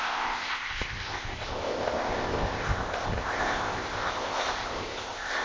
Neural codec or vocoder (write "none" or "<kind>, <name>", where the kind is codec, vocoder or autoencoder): codec, ZipCodec